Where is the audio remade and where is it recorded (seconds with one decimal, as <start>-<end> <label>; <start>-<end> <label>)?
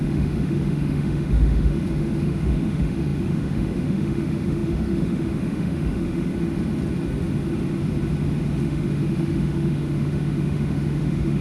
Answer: 0.0-6.3 remade; 6.3-8.6 recorded; 8.6-11.4 remade